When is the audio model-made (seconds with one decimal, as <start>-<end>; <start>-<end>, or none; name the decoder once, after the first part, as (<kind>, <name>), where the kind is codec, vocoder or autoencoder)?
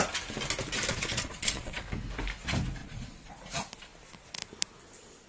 0.9-1.8 (vocoder, Vocos); 2.8-3.3